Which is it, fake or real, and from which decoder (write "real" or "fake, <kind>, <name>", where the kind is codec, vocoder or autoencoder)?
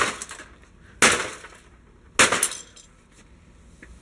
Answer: real